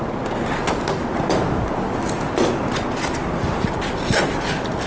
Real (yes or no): yes